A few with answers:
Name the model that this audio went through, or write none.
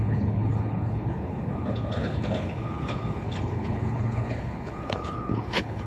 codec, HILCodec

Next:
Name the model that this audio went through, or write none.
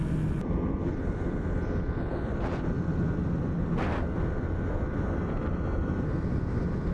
none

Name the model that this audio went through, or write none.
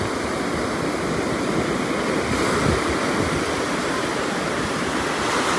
none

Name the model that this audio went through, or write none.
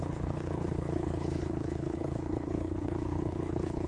codec, HILCodec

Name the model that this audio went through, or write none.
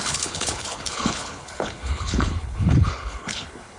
codec, HILCodec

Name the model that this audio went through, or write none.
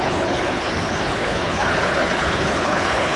codec, HILCodec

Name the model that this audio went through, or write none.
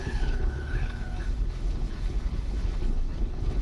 codec, HILCodec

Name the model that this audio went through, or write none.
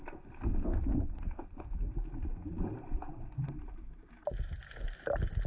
none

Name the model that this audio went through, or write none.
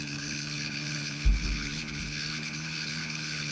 codec, HILCodec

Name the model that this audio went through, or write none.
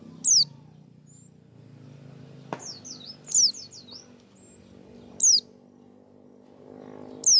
none